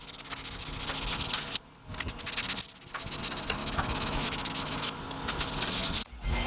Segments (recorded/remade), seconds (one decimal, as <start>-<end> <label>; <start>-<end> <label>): 0.0-3.6 recorded; 3.6-5.0 remade; 5.0-6.5 recorded